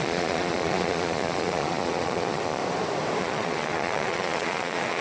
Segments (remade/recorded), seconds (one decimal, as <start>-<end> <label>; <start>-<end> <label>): 0.0-2.6 remade; 2.6-3.2 recorded; 3.2-5.0 remade